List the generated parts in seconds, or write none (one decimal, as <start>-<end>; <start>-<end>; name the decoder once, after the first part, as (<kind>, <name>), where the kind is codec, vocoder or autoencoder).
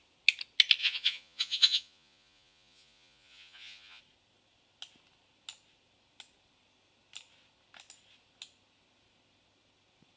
0.8-4.0 (vocoder, Vocos)